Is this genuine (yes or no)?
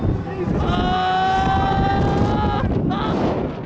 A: yes